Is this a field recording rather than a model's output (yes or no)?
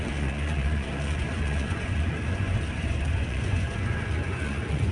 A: no